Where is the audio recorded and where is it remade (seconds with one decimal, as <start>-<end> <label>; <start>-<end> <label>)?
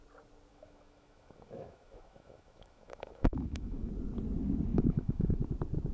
0.0-0.5 recorded; 0.5-3.9 remade; 3.9-4.7 recorded; 4.7-5.4 remade; 5.4-5.9 recorded